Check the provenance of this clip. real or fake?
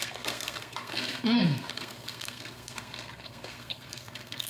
fake